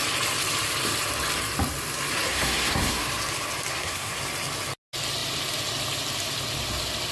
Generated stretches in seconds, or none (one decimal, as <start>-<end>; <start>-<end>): 2.3-3.1; 3.7-4.2